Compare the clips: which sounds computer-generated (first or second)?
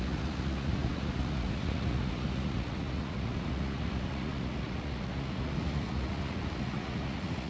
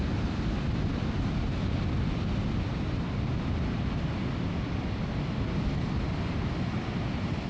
first